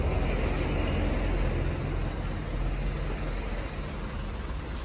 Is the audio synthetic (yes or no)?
no